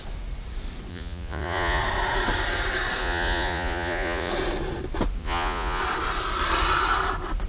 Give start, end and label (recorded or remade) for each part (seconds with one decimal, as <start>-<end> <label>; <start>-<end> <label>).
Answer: 0.0-0.9 recorded; 0.9-1.8 remade; 1.8-3.0 recorded; 3.0-4.3 remade; 4.3-5.2 recorded; 5.2-5.8 remade; 5.8-7.5 recorded